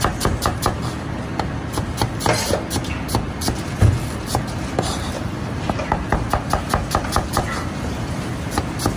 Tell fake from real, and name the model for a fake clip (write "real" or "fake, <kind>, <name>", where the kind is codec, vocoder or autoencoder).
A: real